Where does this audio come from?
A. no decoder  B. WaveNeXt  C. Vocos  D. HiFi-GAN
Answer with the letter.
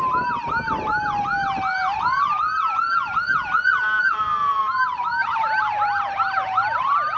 A